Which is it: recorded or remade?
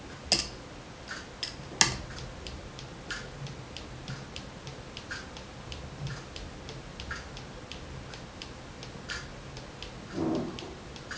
recorded